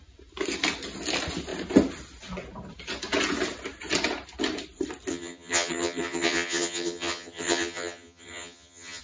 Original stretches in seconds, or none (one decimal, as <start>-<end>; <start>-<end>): 0.0-5.1

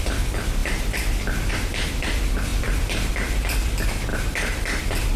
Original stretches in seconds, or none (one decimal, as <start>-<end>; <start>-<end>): none

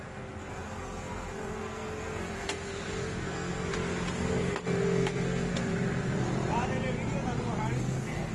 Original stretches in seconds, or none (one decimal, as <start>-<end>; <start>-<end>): 3.7-4.3; 5.7-7.8

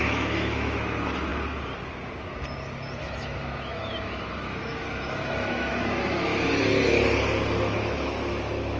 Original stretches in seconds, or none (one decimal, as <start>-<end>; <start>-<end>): 1.3-3.0; 6.3-7.6

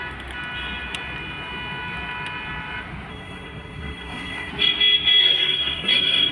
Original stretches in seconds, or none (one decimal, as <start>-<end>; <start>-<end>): 0.0-3.1; 4.5-5.2

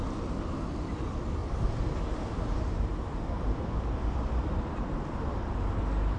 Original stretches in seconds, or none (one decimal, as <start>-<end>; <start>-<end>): 0.0-1.4; 4.7-6.2

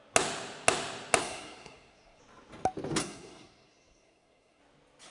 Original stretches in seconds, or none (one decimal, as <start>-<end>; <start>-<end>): 0.0-1.2; 2.2-3.0; 4.6-5.1

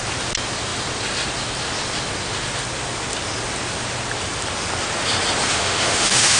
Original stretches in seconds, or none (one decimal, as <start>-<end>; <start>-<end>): 0.0-5.5